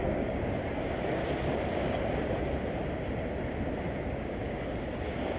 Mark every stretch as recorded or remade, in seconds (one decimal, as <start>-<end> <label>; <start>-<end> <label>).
0.0-1.2 remade; 1.2-3.9 recorded; 3.9-5.4 remade